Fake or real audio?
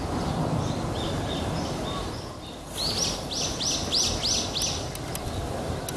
real